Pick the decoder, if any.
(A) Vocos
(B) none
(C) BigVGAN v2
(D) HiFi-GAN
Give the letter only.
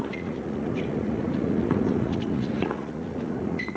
A